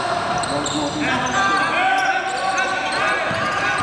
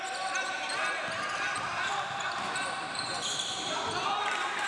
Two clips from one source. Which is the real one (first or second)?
first